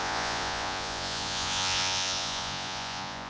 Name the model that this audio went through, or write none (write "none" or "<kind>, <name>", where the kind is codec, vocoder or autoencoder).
vocoder, Vocos